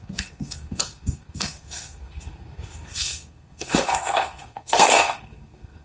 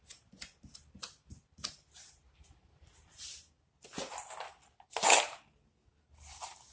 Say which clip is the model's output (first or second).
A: first